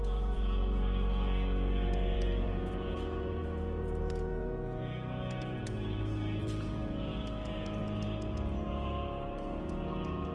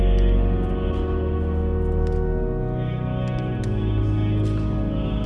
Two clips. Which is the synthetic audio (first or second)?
first